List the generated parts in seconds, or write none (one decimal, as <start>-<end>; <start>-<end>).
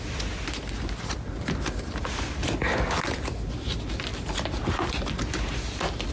none